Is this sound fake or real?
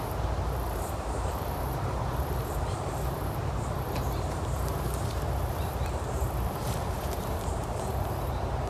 fake